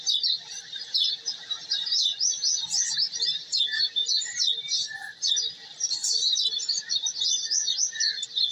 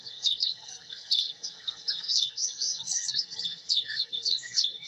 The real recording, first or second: first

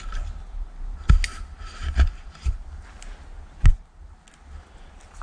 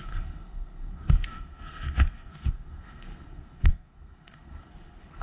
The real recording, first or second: first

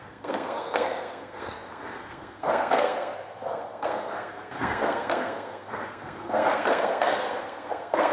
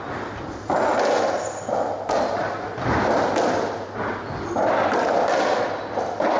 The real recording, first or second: second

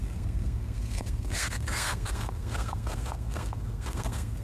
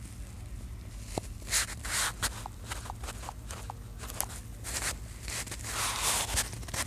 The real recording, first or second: second